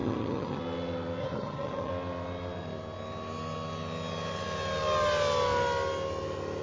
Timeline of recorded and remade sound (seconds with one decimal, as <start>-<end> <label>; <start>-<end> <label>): 0.0-0.6 remade; 0.6-1.2 recorded; 1.2-1.9 remade; 1.9-6.6 recorded